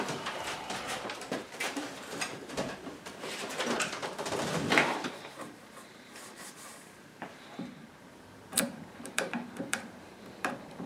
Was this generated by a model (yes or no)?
yes